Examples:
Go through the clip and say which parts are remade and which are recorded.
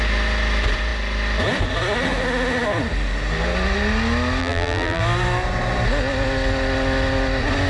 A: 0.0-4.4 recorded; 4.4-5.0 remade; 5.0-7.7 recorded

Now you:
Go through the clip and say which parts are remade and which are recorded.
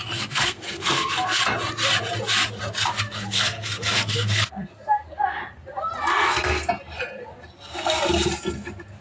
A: 0.0-1.4 remade; 1.4-2.9 recorded; 2.9-5.4 remade; 5.4-6.1 recorded; 6.1-6.7 remade; 6.7-9.0 recorded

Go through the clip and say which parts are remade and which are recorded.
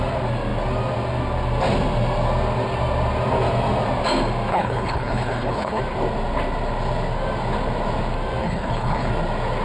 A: 0.0-4.5 recorded; 4.5-5.8 remade; 5.8-8.4 recorded; 8.4-9.1 remade; 9.1-9.6 recorded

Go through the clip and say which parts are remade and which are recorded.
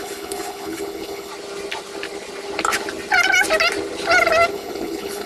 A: 0.0-1.3 remade; 1.3-4.5 recorded; 4.5-5.3 remade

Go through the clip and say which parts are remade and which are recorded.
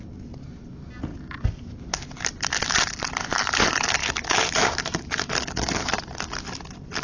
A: 0.0-4.0 recorded; 4.0-5.3 remade; 5.3-7.0 recorded